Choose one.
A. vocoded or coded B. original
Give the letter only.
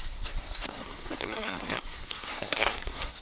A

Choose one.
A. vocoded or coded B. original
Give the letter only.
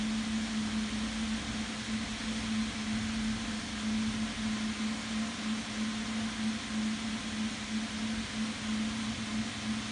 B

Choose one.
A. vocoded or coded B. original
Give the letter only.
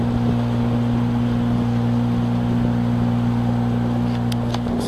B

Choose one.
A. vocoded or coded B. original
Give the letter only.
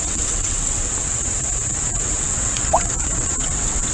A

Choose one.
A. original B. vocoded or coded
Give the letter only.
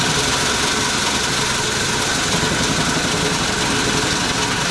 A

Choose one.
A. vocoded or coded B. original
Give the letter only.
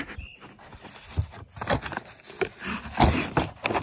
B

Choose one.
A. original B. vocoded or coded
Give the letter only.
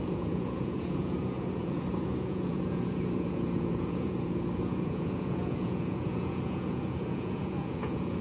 B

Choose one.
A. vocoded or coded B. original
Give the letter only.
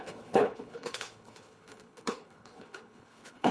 A